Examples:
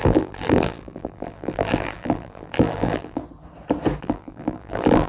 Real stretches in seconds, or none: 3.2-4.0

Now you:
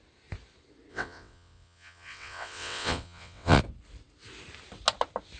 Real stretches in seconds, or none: 0.0-0.9; 3.6-5.4

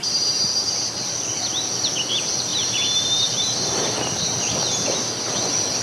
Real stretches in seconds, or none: 0.0-2.5; 4.2-5.8

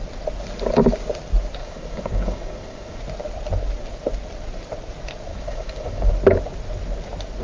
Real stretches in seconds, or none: 0.0-1.6; 3.0-5.3; 6.1-7.4